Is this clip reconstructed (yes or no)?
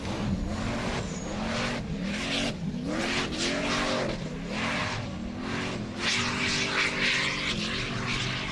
no